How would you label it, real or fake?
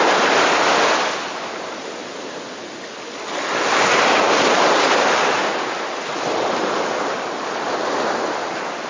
real